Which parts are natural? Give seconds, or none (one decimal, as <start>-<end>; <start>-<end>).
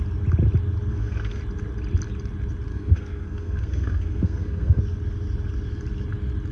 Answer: 0.0-0.9; 1.4-2.7; 4.8-6.5